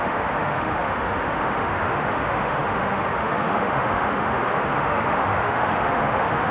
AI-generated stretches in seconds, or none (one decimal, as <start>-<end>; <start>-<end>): 0.0-6.5